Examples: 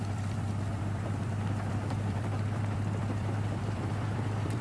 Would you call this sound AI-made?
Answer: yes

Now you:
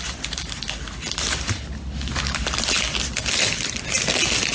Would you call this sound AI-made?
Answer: no